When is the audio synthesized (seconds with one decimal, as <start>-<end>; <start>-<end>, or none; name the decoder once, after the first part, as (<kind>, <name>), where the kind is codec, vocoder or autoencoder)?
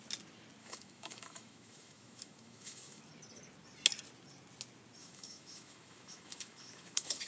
0.6-3.0 (autoencoder, DAC-VAE); 5.0-7.3